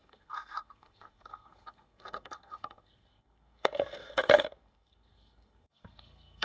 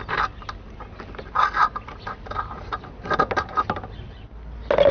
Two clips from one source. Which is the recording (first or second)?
second